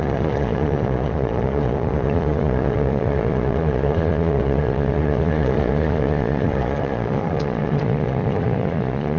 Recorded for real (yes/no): no